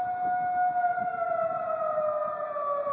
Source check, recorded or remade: recorded